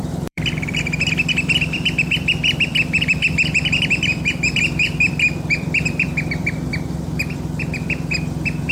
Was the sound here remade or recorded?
remade